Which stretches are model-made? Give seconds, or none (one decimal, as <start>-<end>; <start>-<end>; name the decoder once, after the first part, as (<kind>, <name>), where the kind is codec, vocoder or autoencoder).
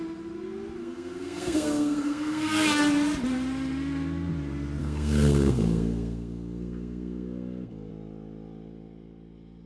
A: 0.8-2.8 (codec, SNAC); 4.8-7.9